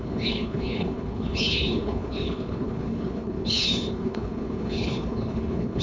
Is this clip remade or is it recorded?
remade